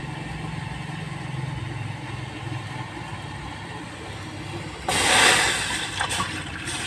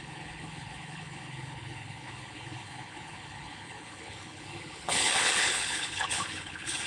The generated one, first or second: second